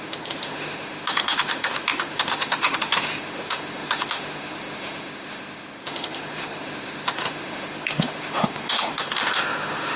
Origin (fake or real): fake